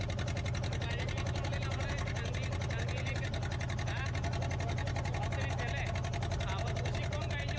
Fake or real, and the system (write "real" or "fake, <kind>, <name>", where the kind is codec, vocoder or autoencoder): real